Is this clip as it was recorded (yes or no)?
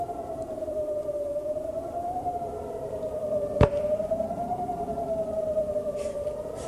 no